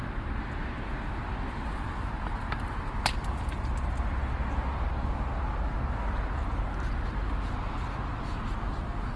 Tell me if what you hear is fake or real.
real